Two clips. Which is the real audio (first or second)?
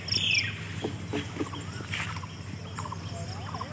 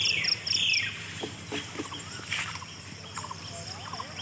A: first